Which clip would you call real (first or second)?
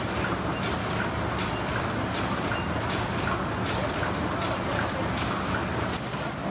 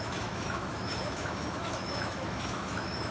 first